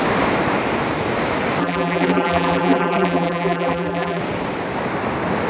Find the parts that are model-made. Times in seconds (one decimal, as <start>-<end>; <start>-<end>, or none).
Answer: 1.6-4.2